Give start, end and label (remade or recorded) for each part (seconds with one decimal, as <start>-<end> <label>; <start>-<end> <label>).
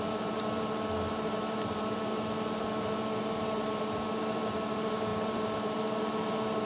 0.0-6.7 remade